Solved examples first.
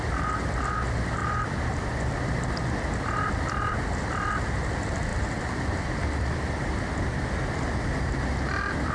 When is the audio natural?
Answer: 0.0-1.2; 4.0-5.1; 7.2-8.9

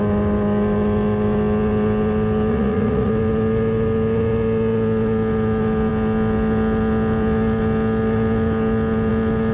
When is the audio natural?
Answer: 0.0-2.5; 3.1-9.5

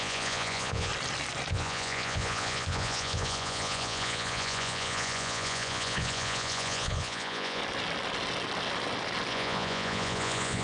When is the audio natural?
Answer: 0.9-1.5; 7.6-9.3

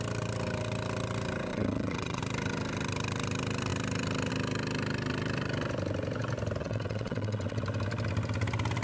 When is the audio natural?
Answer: 0.0-1.5; 2.2-6.6; 7.6-8.8

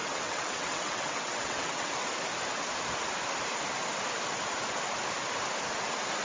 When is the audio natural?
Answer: 1.9-6.2

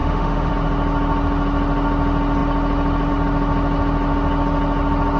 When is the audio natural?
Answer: 0.5-5.2

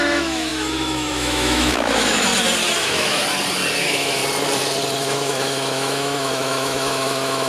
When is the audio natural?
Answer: 2.3-2.8; 3.2-3.8; 4.2-5.0

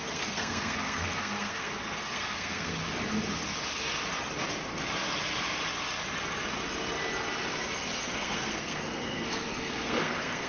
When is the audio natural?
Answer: 2.8-8.0